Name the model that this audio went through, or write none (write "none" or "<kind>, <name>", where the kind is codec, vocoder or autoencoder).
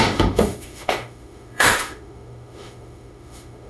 autoencoder, DAC-VAE